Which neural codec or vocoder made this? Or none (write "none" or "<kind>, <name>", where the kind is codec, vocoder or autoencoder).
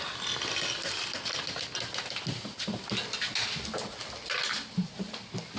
none